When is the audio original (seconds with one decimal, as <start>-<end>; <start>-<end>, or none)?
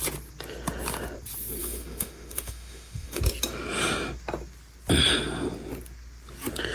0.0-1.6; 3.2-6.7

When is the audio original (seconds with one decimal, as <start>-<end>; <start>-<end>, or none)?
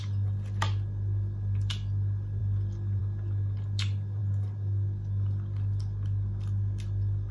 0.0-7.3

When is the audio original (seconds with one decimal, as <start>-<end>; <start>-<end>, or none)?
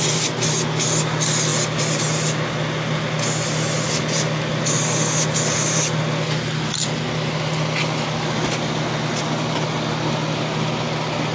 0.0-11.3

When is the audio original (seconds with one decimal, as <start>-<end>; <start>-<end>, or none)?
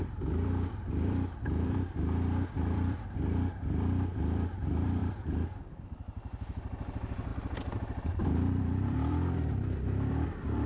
none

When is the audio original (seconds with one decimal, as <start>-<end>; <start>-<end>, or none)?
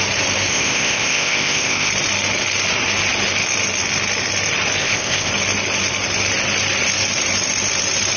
0.0-0.5; 1.9-4.8; 5.3-8.2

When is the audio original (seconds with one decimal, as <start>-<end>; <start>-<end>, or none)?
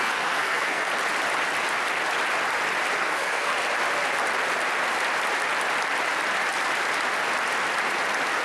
0.9-3.0; 3.5-8.4